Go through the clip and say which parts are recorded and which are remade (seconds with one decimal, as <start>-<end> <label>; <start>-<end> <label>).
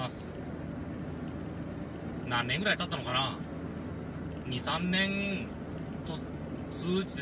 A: 0.0-7.2 recorded